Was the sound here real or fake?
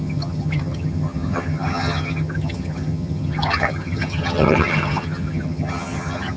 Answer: fake